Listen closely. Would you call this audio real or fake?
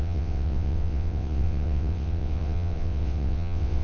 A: fake